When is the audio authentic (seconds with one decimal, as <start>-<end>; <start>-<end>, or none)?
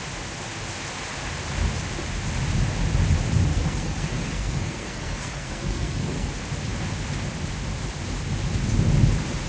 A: 0.0-3.5; 6.3-9.5